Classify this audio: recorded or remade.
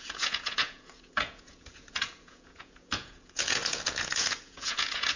remade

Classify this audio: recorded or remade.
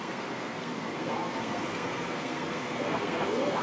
remade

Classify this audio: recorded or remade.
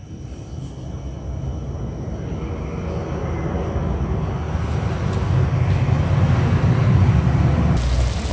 recorded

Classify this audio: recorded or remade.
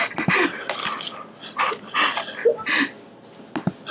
recorded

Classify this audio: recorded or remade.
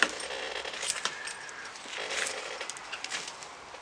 recorded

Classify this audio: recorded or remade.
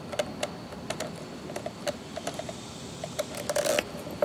recorded